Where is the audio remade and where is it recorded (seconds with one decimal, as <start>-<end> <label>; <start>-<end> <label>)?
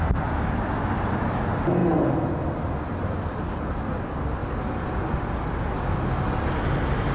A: 0.0-7.1 recorded